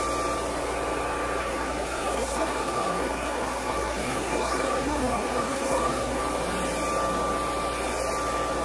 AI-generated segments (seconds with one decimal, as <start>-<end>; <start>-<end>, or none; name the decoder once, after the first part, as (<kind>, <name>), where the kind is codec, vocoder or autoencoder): 1.4-6.2 (codec, SNAC)